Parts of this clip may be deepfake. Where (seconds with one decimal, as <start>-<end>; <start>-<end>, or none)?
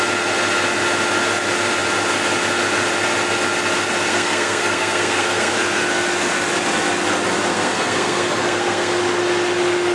4.1-5.5; 7.5-9.0